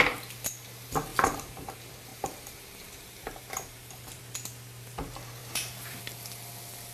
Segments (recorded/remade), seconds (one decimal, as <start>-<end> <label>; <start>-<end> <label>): 0.0-1.1 recorded; 1.1-1.7 remade; 1.7-2.1 recorded; 2.1-4.2 remade; 4.2-5.4 recorded; 5.4-6.0 remade; 6.0-6.9 recorded